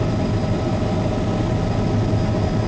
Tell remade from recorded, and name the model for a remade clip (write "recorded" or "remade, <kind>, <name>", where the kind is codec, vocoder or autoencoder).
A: recorded